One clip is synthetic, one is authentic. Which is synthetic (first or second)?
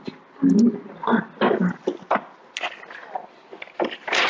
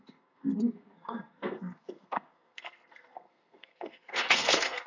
second